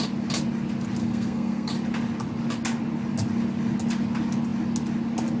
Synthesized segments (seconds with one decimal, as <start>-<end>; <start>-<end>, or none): 1.0-1.7